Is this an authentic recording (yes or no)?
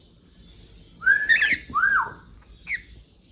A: yes